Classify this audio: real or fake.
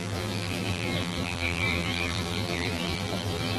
fake